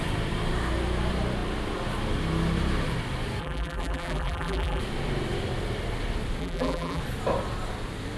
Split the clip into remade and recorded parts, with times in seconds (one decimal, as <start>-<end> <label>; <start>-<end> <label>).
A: 0.0-3.4 recorded; 3.4-4.8 remade; 4.8-6.4 recorded; 6.4-7.0 remade; 7.0-8.2 recorded